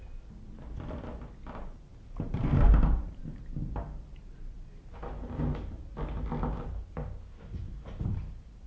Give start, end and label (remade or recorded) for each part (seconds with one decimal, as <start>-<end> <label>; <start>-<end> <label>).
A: 0.0-1.9 recorded; 1.9-3.2 remade; 3.2-8.7 recorded